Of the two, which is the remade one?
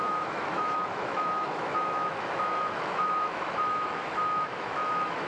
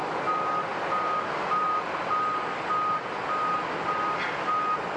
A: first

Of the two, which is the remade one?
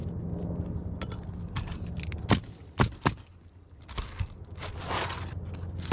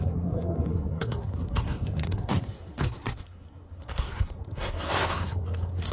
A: second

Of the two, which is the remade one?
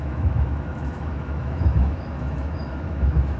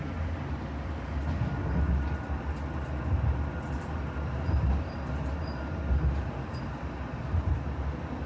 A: first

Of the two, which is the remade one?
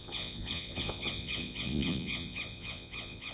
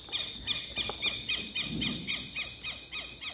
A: first